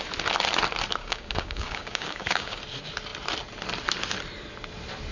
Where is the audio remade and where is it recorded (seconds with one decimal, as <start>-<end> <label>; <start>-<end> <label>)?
0.0-1.0 recorded; 1.0-2.6 remade; 2.6-5.1 recorded